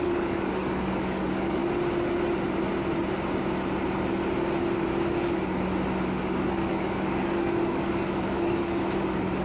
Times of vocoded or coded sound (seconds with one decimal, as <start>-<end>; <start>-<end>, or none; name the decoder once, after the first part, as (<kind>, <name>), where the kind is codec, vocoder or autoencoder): 0.0-1.6 (codec, DAC); 6.0-9.4